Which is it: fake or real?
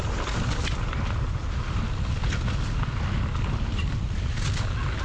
real